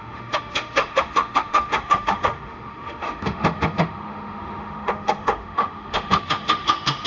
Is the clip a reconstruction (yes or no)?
yes